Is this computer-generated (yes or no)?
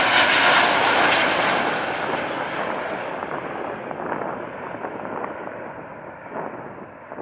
no